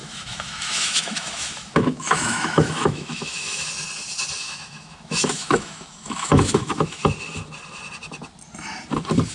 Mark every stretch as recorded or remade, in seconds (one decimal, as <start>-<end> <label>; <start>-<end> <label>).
0.0-3.7 remade; 3.7-4.4 recorded; 4.4-7.0 remade; 7.0-9.3 recorded